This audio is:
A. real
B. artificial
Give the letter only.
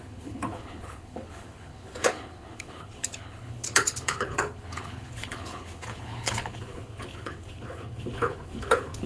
B